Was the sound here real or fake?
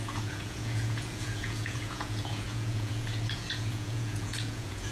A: fake